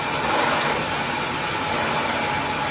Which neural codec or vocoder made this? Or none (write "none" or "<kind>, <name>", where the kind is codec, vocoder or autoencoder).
none